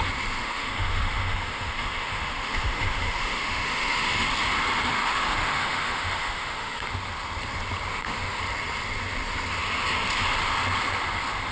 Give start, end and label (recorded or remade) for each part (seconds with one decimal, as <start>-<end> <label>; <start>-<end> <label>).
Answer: 0.0-0.4 recorded; 0.4-4.3 remade; 4.3-4.9 recorded; 4.9-6.9 remade; 6.9-7.9 recorded; 7.9-8.4 remade; 8.4-11.5 recorded